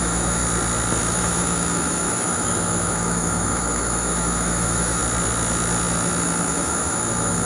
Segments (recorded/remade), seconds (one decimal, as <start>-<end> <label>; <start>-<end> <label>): 0.0-0.4 remade; 0.4-1.0 recorded; 1.0-5.0 remade; 5.0-6.5 recorded; 6.5-7.5 remade